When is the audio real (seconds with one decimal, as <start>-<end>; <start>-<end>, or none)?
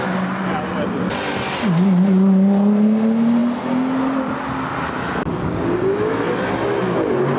0.0-7.4